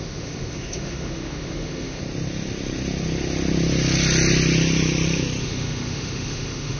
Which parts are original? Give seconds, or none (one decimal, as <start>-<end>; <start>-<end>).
2.0-5.4